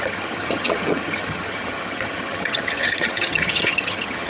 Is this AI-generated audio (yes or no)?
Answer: yes